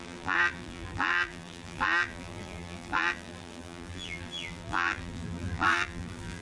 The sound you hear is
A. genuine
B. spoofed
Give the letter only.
B